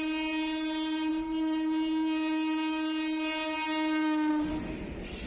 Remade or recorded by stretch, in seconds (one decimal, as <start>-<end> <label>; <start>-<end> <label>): 0.0-5.3 recorded